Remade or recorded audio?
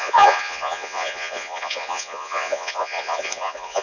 remade